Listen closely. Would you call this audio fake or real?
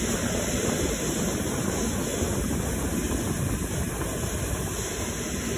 real